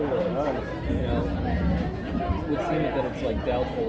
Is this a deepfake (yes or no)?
no